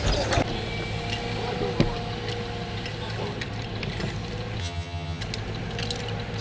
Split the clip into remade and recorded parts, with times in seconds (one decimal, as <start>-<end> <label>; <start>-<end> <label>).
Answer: 0.0-4.6 recorded; 4.6-5.2 remade; 5.2-6.4 recorded